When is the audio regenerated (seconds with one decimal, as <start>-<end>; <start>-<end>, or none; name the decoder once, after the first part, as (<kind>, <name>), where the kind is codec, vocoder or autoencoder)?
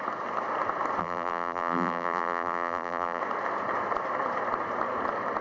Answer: 1.0-3.2 (vocoder, BigVGAN v2)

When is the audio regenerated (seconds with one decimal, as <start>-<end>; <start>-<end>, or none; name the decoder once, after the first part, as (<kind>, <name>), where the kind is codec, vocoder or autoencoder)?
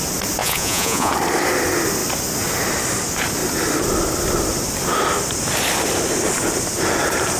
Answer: 0.4-1.1 (vocoder, Vocos)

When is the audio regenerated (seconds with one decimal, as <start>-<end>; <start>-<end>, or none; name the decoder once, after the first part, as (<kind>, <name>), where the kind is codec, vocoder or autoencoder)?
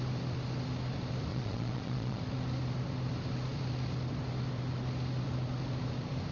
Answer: 1.3-2.2 (vocoder, Vocos)